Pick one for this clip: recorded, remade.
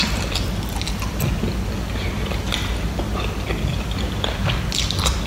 recorded